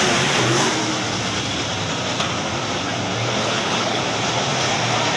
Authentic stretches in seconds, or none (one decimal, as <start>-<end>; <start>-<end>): 0.0-3.4; 4.0-5.2